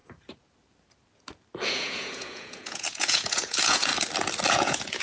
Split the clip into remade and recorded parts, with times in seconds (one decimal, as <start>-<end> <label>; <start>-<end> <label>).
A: 0.0-1.7 recorded; 1.7-3.9 remade; 3.9-4.5 recorded; 4.5-5.0 remade